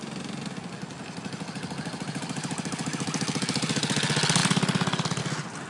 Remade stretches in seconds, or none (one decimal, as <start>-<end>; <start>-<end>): none